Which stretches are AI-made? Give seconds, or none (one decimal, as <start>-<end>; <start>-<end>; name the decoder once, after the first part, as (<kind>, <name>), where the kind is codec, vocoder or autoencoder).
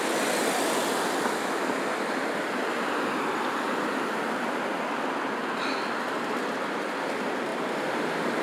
none